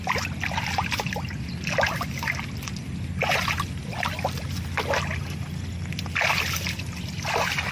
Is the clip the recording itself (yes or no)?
yes